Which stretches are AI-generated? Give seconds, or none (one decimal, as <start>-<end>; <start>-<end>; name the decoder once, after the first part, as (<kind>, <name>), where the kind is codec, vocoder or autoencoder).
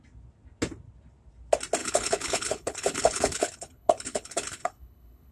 1.8-5.3 (codec, HILCodec)